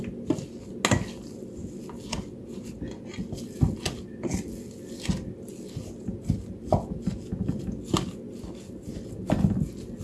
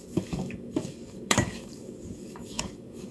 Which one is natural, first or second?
first